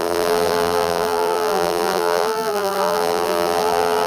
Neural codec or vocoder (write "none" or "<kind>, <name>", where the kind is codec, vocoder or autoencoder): vocoder, BigVGAN v2